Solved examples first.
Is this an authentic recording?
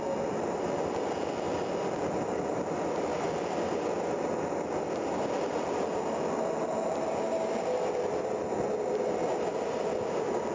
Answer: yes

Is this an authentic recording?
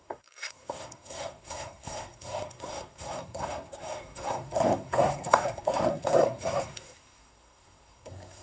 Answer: no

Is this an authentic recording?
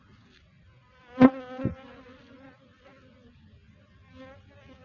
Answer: yes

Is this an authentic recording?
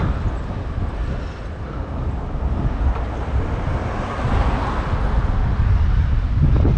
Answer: yes